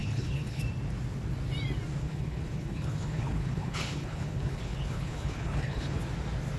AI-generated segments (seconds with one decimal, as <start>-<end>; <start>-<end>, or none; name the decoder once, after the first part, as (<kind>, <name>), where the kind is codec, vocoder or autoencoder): 0.0-0.6 (codec, HILCodec); 2.0-6.0